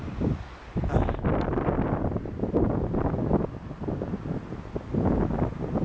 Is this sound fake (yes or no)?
no